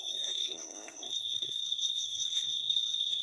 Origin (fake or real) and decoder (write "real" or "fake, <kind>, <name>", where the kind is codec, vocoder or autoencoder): fake, codec, SNAC